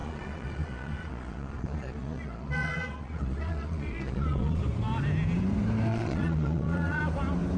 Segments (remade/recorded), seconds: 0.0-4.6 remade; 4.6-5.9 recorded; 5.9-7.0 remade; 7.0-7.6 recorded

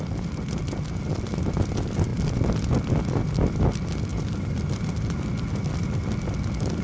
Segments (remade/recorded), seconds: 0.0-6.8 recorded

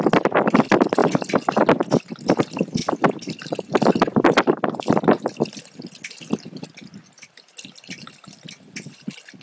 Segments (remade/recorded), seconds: 0.0-9.4 recorded